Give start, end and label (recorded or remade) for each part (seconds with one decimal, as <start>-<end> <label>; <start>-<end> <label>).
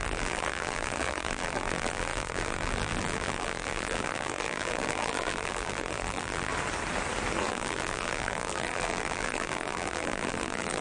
0.0-6.5 remade; 6.5-7.5 recorded; 7.5-10.8 remade